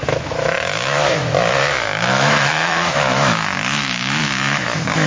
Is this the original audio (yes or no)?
no